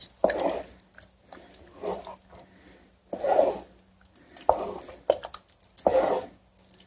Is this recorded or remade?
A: recorded